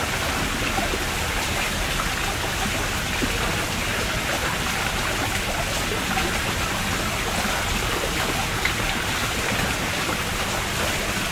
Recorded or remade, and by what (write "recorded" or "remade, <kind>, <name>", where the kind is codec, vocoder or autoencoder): recorded